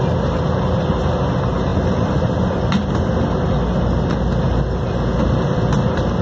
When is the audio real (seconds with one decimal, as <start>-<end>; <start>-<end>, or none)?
0.0-6.2